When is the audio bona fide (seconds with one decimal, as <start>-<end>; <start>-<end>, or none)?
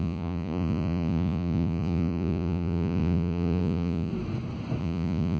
4.1-4.8